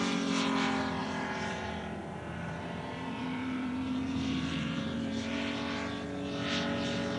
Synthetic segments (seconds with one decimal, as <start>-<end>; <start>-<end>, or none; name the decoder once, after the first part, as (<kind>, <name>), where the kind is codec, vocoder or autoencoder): 1.0-5.3 (vocoder, BigVGAN v2)